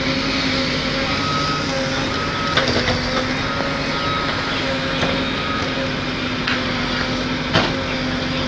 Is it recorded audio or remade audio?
recorded